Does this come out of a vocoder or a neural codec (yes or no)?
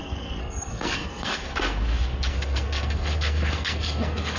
yes